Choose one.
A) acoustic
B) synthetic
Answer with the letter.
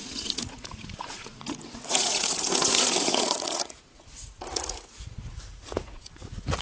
B